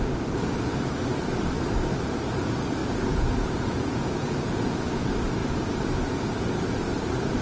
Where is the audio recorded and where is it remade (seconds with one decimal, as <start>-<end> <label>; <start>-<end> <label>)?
0.0-2.8 recorded; 2.8-4.9 remade; 4.9-7.4 recorded